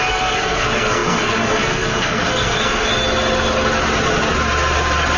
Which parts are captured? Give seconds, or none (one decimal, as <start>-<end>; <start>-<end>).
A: 2.9-5.2